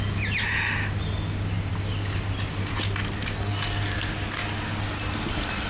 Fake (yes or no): no